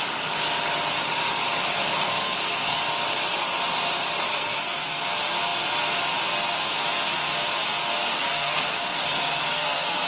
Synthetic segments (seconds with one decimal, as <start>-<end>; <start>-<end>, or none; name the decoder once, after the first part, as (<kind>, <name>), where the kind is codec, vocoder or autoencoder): 1.8-2.8 (codec, SNAC); 4.3-5.0; 8.0-10.1